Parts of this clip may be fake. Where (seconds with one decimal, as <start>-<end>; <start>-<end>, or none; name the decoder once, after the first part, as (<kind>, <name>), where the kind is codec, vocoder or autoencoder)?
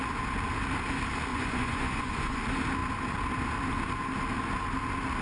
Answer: 1.3-2.4 (vocoder, Vocos)